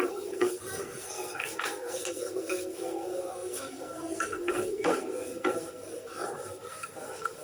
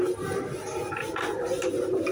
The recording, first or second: second